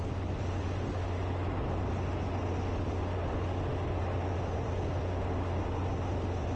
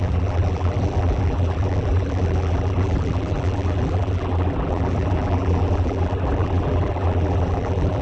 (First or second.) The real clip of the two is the first